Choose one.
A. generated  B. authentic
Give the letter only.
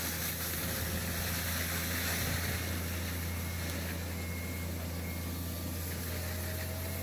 B